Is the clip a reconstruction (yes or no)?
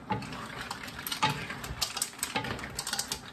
no